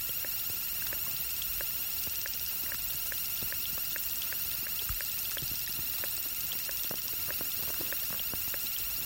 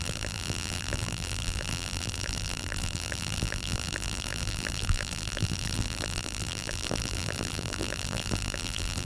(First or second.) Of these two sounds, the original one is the first